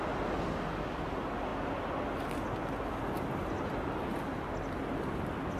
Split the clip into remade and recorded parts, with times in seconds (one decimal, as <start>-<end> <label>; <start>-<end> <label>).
0.0-5.6 recorded